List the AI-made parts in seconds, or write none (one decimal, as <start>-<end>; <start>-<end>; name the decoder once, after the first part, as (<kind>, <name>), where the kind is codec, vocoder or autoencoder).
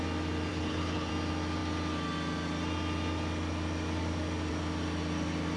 0.5-1.1 (codec, HILCodec)